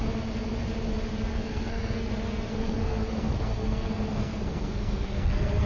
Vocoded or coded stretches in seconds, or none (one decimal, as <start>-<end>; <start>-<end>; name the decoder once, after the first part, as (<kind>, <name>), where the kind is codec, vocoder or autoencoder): 1.3-2.1 (codec, SNAC); 2.5-5.7